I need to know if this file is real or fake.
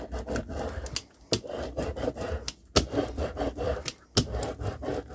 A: real